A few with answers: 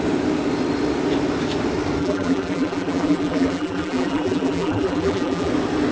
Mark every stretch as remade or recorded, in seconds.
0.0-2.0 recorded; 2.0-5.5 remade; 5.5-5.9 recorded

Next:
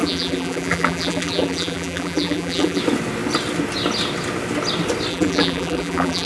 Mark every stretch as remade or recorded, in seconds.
0.0-2.8 remade; 2.8-5.1 recorded; 5.1-6.3 remade

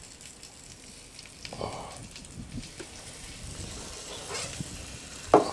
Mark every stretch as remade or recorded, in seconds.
0.0-2.0 recorded; 2.0-5.5 remade

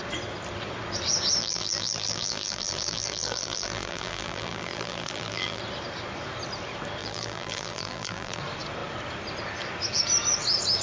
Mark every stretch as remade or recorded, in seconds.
0.0-1.4 recorded; 1.4-5.6 remade; 5.6-7.0 recorded; 7.0-8.4 remade; 8.4-10.8 recorded